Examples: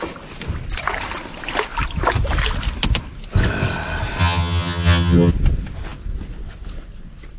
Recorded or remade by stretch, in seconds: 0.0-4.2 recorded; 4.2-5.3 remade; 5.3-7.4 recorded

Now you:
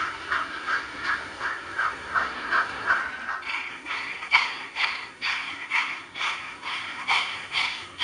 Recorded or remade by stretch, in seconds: 0.0-3.0 remade; 3.0-3.7 recorded; 3.7-8.0 remade

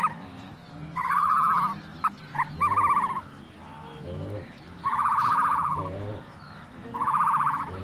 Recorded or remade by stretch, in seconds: 0.0-7.8 remade

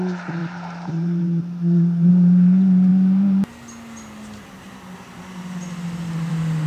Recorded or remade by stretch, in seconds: 0.0-0.4 recorded; 0.4-2.1 remade; 2.1-6.7 recorded

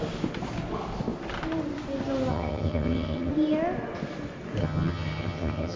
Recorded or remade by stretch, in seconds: 0.0-2.3 recorded; 2.3-3.3 remade; 3.3-4.6 recorded; 4.6-5.8 remade

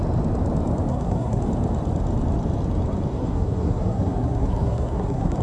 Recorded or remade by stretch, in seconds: 0.0-0.9 recorded; 0.9-1.4 remade; 1.4-3.1 recorded; 3.1-5.4 remade